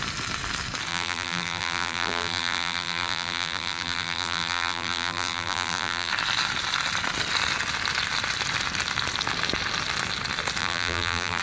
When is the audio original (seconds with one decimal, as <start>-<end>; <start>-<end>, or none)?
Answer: 0.0-0.9; 6.1-10.6